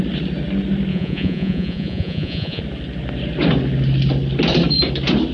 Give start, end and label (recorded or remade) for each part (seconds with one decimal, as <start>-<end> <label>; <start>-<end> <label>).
0.0-0.9 recorded; 0.9-2.6 remade; 2.6-5.3 recorded

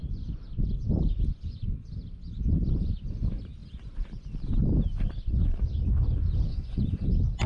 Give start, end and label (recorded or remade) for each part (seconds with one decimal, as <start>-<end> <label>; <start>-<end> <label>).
0.0-6.5 recorded; 6.5-7.1 remade; 7.1-7.5 recorded

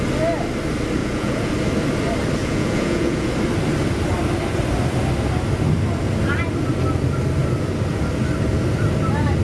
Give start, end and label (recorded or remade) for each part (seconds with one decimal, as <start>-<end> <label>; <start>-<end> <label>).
0.0-1.0 recorded; 1.0-1.5 remade; 1.5-2.4 recorded; 2.4-3.3 remade; 3.3-9.4 recorded

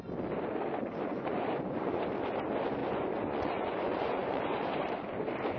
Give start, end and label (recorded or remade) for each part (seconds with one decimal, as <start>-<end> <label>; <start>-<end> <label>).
0.0-1.1 recorded; 1.1-2.0 remade; 2.0-2.8 recorded; 2.8-4.4 remade; 4.4-5.6 recorded

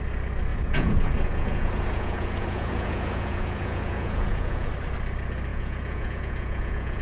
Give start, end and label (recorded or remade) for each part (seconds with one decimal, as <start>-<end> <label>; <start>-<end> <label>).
0.0-0.5 recorded; 0.5-4.7 remade; 4.7-5.5 recorded; 5.5-7.0 remade

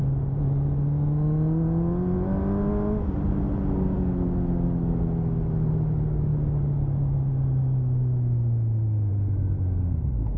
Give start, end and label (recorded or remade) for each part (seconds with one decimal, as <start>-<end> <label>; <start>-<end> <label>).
0.0-10.4 recorded

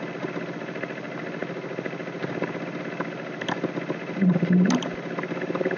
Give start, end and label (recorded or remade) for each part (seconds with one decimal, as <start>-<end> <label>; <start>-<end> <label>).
0.0-5.8 recorded

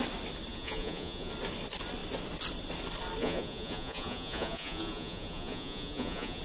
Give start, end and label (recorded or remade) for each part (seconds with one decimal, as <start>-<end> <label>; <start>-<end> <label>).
0.0-0.5 recorded; 0.5-1.3 remade; 1.3-3.2 recorded; 3.2-6.4 remade